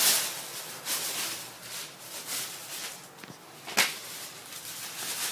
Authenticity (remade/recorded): recorded